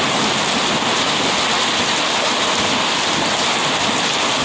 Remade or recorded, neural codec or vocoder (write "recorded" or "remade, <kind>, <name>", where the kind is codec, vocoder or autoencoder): recorded